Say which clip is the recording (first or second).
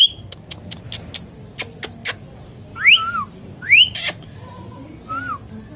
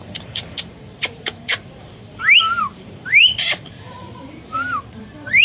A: first